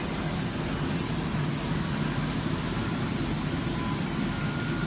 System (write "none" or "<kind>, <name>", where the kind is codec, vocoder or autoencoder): none